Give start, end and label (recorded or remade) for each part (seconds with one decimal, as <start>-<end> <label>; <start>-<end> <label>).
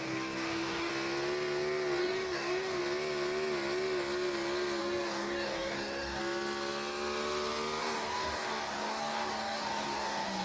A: 0.0-0.9 remade; 0.9-2.0 recorded; 2.0-2.8 remade; 2.8-4.8 recorded; 4.8-6.2 remade; 6.2-7.8 recorded; 7.8-10.4 remade